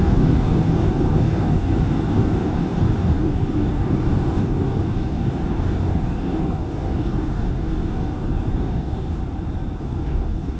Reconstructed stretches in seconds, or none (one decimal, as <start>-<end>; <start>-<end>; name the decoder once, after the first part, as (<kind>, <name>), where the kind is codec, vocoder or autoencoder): 0.0-9.2 (codec, DAC); 9.8-10.6